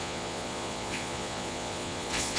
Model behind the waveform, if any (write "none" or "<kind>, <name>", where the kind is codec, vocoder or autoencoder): vocoder, Vocos